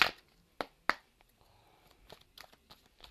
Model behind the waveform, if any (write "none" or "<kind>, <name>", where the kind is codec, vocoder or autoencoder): none